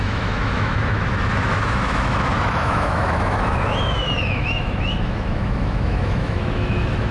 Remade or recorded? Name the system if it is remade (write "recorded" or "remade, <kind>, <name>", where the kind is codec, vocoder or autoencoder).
remade, autoencoder, DAC-VAE